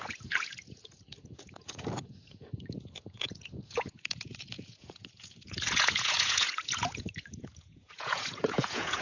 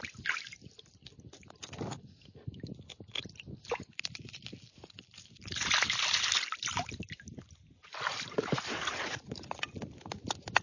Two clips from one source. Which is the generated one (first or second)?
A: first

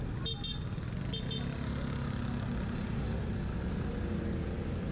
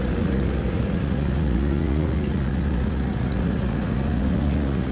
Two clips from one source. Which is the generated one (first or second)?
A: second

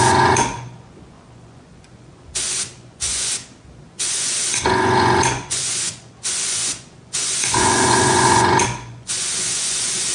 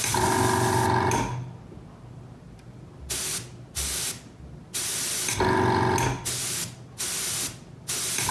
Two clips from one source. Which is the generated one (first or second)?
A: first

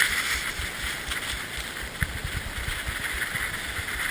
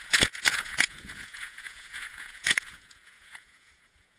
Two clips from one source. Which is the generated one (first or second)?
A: second